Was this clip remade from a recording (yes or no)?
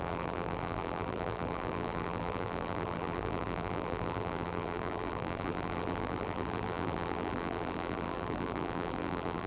yes